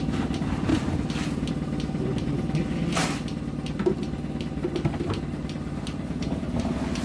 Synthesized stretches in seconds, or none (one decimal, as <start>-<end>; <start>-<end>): 0.7-1.5